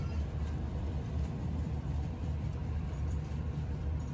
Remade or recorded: remade